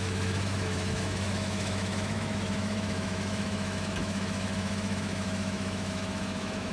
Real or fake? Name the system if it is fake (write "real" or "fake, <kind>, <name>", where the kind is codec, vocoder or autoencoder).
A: fake, autoencoder, DAC-VAE